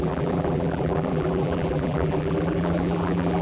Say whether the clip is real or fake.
fake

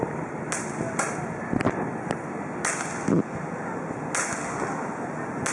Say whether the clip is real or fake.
real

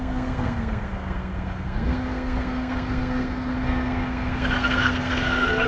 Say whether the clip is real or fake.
fake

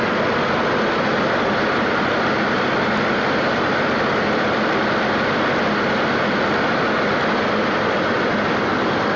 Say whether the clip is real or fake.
real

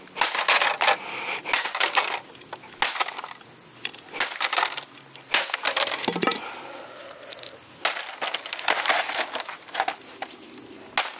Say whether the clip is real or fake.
real